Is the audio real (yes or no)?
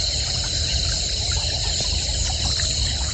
yes